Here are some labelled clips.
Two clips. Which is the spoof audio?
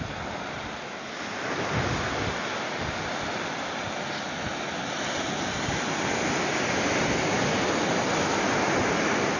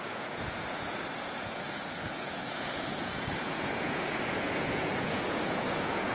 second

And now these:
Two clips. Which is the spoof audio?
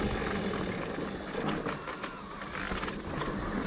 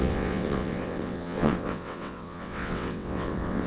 second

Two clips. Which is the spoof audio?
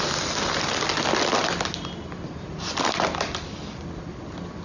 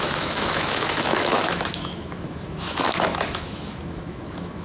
second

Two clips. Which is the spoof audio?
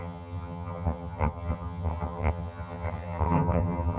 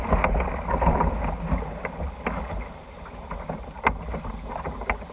first